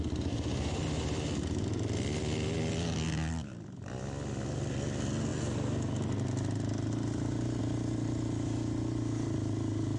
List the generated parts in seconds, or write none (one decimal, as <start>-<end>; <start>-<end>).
none